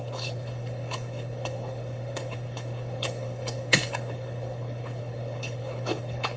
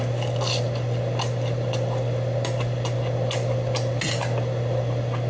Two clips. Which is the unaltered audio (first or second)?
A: second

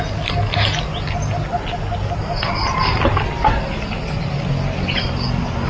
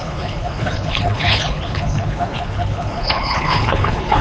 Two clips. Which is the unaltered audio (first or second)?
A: first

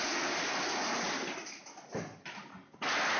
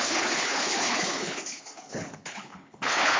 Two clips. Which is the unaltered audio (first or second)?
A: first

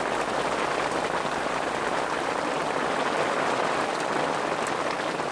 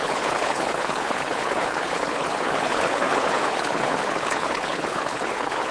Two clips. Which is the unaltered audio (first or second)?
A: first